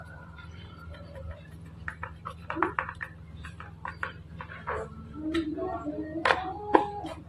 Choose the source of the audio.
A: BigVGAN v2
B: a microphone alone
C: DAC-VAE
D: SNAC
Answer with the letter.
A